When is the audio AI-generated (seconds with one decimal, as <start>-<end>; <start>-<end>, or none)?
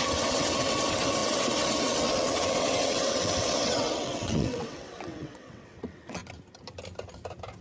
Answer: 0.0-6.2